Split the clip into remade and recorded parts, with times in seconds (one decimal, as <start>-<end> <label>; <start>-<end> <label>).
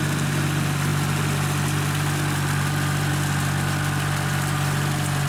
0.0-5.3 recorded